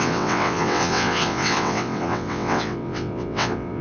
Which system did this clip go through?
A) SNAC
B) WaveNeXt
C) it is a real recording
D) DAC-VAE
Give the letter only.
B